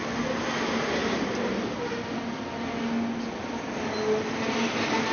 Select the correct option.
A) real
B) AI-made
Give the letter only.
A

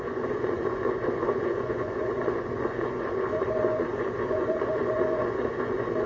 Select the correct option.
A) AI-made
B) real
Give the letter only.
A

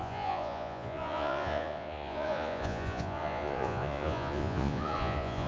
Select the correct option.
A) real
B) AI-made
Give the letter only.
B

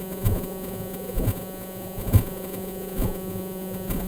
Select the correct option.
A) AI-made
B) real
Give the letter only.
A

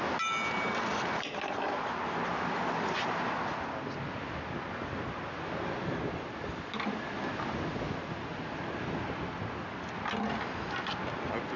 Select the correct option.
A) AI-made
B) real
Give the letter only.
B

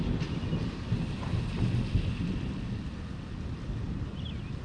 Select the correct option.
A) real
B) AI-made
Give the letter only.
A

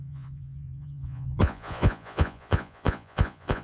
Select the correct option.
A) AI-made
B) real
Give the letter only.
A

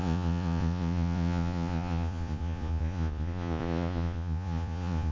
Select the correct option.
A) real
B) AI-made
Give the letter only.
B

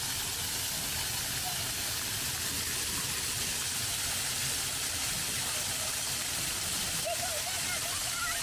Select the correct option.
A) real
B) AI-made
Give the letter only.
A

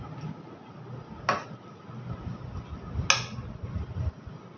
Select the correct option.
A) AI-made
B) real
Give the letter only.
B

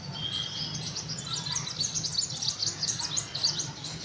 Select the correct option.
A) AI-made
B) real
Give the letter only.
B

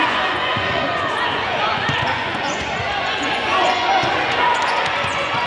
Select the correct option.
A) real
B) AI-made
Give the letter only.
B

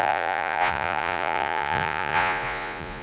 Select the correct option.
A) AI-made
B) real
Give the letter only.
A